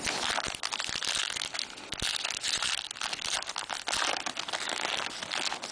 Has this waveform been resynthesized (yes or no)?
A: no